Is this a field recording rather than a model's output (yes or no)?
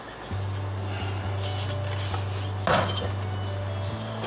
yes